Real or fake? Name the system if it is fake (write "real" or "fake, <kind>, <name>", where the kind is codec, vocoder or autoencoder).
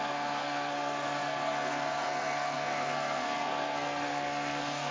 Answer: fake, codec, SNAC